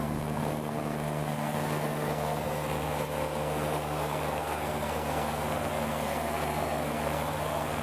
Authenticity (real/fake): fake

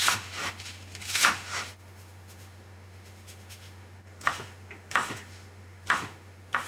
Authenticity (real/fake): fake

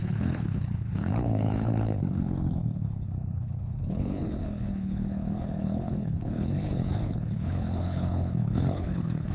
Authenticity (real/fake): fake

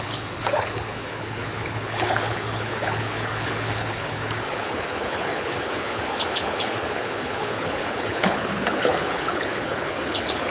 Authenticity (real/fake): fake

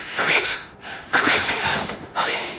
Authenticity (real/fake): fake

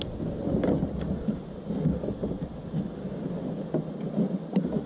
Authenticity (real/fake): real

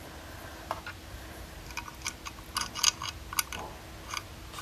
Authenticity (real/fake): real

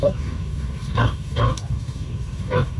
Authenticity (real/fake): fake